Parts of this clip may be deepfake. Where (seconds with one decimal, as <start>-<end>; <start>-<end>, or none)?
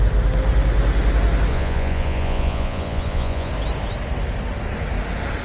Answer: 1.5-3.5